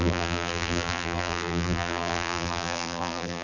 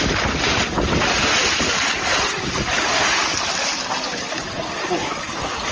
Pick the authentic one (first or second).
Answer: second